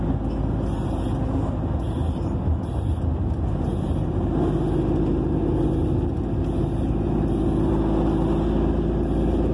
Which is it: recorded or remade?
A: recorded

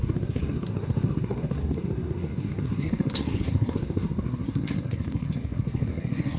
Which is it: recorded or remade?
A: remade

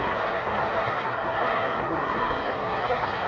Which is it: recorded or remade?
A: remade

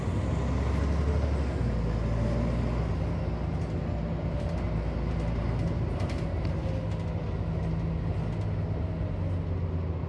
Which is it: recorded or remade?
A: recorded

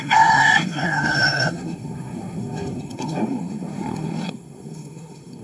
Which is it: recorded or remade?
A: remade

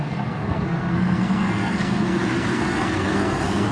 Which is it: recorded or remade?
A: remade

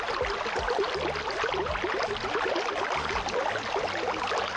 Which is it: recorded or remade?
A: recorded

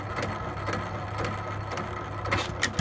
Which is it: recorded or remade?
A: recorded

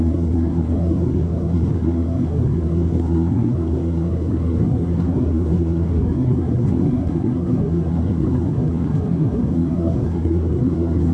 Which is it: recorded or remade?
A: remade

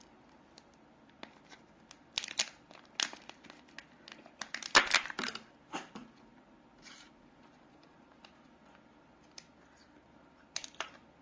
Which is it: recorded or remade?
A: recorded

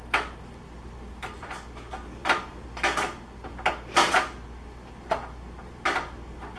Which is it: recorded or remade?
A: recorded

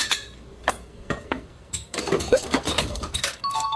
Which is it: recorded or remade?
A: remade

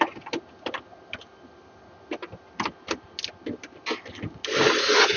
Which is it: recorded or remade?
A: recorded